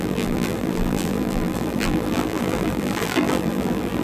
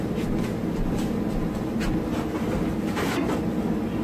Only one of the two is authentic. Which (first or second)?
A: second